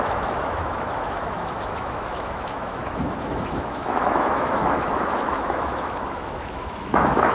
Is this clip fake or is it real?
fake